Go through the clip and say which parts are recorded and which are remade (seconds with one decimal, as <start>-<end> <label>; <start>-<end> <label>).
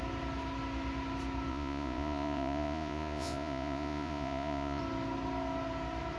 0.0-1.5 recorded; 1.5-4.8 remade; 4.8-6.2 recorded